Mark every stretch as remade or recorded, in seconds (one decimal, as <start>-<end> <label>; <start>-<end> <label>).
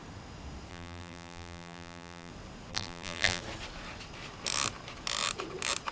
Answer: 0.0-0.7 recorded; 0.7-2.3 remade; 2.3-2.7 recorded; 2.7-3.4 remade; 3.4-5.9 recorded